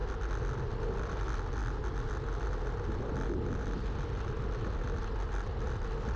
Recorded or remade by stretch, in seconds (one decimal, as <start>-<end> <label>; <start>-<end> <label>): 0.0-6.2 recorded